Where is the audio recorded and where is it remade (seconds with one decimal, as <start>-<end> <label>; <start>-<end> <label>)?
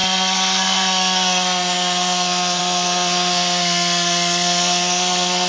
0.0-5.5 remade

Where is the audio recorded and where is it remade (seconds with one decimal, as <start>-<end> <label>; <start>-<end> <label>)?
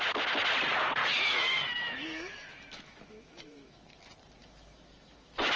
0.0-1.0 recorded; 1.0-4.0 remade; 4.0-4.4 recorded; 4.4-5.6 remade